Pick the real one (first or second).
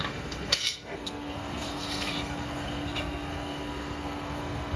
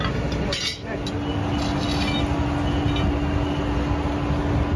second